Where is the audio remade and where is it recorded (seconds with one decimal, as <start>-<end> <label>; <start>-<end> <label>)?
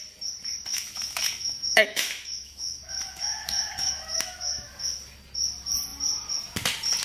0.0-0.7 recorded; 0.7-4.9 remade; 4.9-7.0 recorded